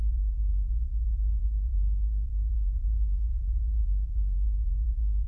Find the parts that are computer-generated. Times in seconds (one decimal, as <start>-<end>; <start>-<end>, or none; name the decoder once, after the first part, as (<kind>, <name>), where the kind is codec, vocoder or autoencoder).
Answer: 0.0-5.3 (vocoder, Vocos)